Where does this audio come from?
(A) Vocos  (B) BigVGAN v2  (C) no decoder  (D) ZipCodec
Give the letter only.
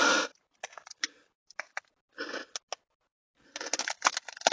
C